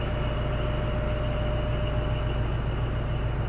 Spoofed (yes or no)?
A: no